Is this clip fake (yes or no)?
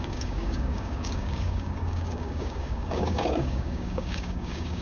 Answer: yes